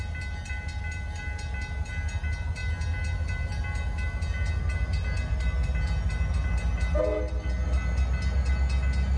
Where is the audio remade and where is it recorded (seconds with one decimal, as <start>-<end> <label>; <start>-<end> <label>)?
0.0-9.2 recorded